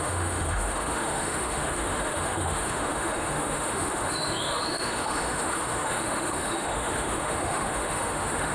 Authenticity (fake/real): fake